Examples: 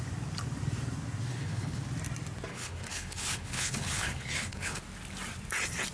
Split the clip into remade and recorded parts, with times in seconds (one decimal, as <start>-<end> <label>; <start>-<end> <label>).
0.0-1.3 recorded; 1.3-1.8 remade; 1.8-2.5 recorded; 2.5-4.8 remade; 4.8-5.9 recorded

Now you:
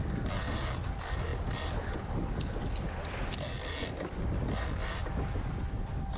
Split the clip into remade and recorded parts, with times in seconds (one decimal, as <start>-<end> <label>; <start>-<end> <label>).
0.0-6.2 recorded

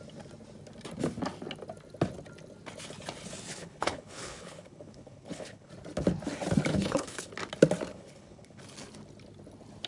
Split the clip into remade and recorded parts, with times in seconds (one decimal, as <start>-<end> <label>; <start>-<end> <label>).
0.0-3.5 recorded; 3.5-5.7 remade; 5.7-6.7 recorded; 6.7-7.3 remade; 7.3-7.9 recorded; 7.9-8.6 remade; 8.6-9.9 recorded

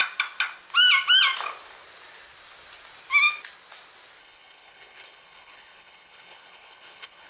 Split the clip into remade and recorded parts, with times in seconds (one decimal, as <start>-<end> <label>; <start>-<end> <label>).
0.0-4.2 recorded; 4.2-7.3 remade

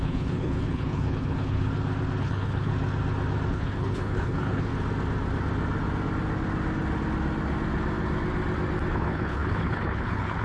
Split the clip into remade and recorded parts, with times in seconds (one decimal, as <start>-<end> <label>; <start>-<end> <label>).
0.0-1.7 remade; 1.7-2.2 recorded; 2.2-2.7 remade; 2.7-3.5 recorded; 3.5-4.7 remade; 4.7-8.9 recorded; 8.9-10.4 remade

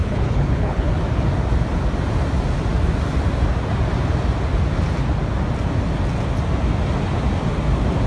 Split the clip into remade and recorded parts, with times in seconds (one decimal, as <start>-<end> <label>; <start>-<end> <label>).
0.0-0.9 remade; 0.9-8.1 recorded